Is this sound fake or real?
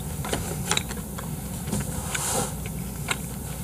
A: fake